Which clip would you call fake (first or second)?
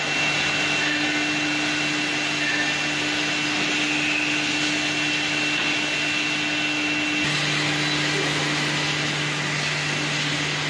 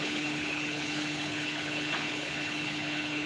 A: second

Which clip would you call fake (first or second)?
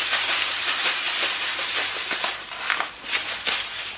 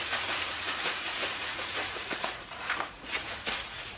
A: second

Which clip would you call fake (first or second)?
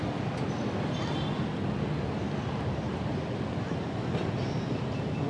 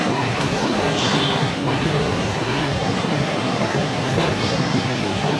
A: second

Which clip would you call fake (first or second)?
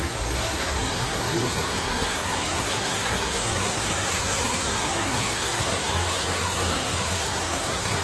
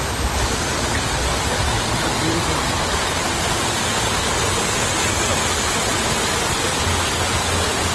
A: first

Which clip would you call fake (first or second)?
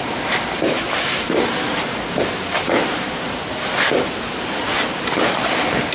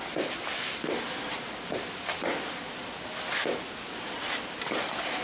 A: first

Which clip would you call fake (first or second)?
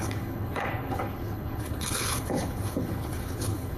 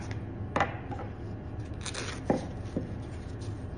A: first